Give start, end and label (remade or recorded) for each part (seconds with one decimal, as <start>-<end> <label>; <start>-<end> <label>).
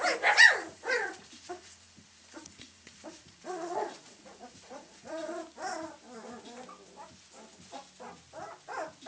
0.0-0.7 recorded; 0.7-5.3 remade; 5.3-9.1 recorded